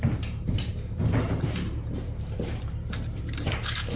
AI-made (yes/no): yes